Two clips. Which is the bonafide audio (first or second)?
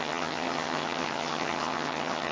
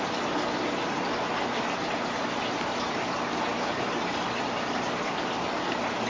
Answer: second